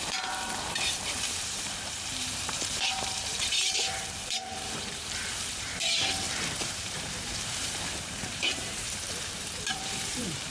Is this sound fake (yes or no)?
yes